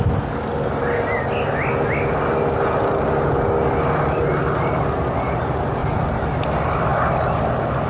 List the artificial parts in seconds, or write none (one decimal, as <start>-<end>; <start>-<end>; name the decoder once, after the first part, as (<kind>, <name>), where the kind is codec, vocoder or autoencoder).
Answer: none